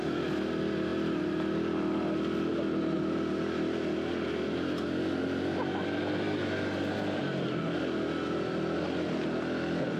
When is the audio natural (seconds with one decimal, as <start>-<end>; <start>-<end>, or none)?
0.0-10.0